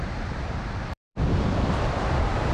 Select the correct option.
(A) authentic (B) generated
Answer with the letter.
B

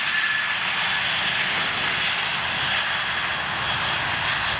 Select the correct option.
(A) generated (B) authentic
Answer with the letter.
B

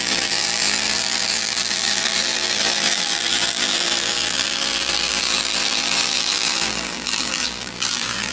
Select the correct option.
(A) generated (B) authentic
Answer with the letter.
A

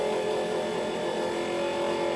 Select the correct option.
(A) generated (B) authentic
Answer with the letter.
B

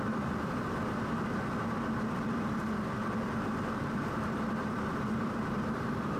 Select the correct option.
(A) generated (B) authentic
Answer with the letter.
A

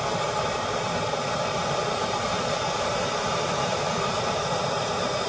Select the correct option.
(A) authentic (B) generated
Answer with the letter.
B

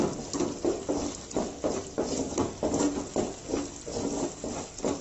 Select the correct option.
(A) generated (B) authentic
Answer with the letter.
B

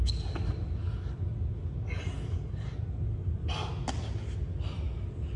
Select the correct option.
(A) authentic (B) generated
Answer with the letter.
A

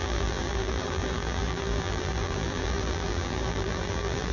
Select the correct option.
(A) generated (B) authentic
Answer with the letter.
A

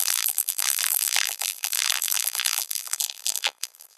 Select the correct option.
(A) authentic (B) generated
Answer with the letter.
B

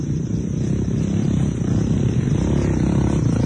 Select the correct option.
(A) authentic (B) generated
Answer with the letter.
A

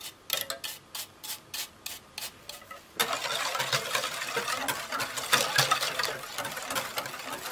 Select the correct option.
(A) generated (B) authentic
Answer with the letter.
B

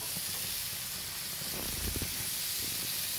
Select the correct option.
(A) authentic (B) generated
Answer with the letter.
A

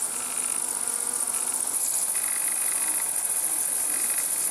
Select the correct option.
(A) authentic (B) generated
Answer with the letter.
A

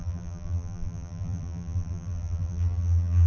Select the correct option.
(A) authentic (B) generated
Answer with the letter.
B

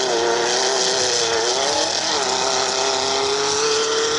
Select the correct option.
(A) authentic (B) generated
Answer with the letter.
A